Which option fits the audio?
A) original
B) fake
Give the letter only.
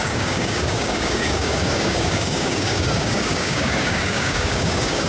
B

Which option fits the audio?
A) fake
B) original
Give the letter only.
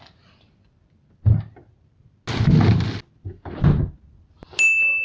B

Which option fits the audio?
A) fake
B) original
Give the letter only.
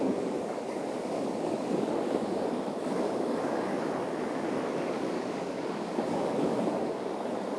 A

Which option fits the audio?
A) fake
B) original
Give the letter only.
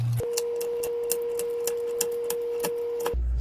B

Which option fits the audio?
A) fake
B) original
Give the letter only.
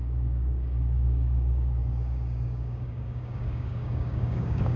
A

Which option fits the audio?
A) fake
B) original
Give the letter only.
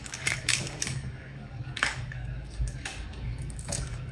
A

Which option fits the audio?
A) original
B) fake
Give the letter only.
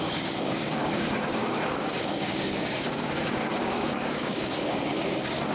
B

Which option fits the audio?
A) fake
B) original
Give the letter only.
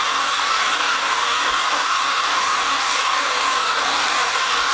A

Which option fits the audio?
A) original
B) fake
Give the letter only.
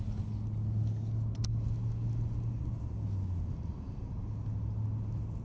A